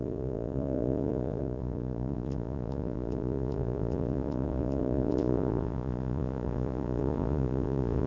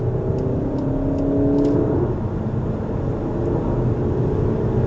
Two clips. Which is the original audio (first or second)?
second